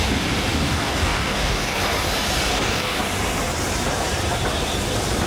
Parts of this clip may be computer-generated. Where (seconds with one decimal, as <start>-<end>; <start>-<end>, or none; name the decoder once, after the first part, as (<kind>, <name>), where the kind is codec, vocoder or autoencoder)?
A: 0.5-1.8 (codec, DAC); 2.5-3.0